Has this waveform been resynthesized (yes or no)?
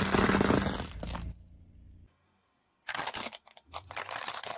no